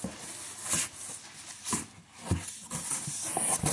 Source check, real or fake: real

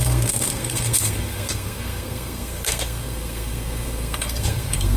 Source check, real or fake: fake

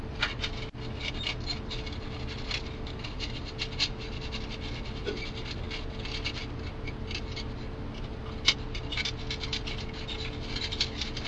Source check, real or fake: real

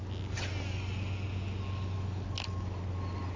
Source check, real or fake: real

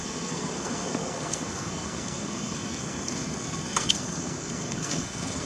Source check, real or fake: fake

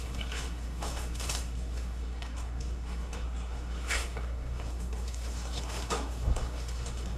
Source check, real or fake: fake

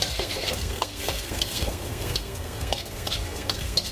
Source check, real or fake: fake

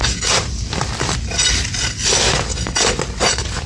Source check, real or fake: real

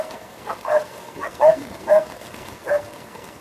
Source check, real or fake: fake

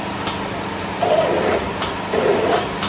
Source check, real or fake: real